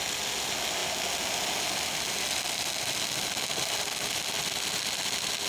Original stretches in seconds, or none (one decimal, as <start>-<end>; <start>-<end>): 0.0-5.5

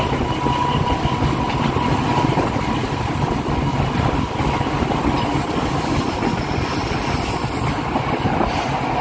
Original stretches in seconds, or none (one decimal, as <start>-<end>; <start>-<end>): 0.0-9.0

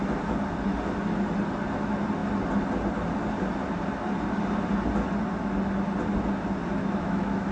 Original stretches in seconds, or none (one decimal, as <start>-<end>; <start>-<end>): 0.0-6.8

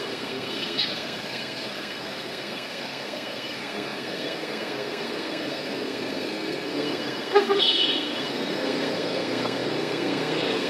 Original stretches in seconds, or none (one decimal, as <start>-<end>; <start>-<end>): none

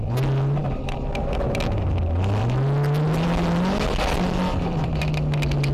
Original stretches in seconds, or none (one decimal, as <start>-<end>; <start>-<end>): 0.0-4.5; 5.0-5.7

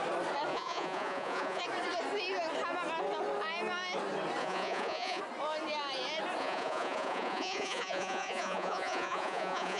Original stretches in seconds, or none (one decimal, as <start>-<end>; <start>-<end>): 0.0-0.5; 1.6-4.4; 5.2-6.4

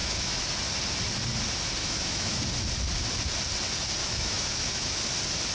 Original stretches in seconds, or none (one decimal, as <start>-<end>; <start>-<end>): 0.5-1.8; 2.4-4.0; 5.0-5.5

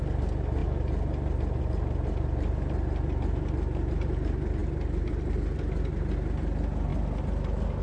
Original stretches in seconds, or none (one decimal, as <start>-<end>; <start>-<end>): 0.0-7.8